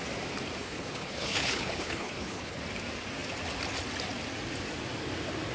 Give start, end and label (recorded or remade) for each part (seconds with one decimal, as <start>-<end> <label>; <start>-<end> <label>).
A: 0.0-0.6 recorded; 0.6-2.6 remade; 2.6-5.5 recorded